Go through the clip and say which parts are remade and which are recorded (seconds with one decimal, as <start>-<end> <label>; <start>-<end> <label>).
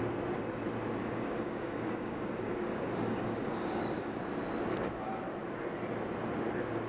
0.0-1.0 recorded; 1.0-4.2 remade; 4.2-6.9 recorded